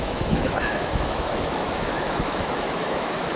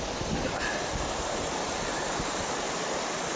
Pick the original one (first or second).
second